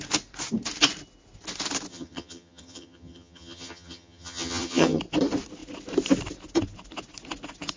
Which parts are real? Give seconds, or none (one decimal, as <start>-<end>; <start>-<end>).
0.0-1.9; 5.0-7.8